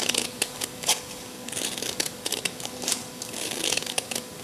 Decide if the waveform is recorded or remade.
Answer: remade